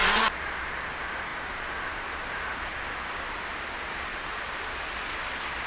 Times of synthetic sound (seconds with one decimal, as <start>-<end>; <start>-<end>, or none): 1.3-2.7; 4.1-4.6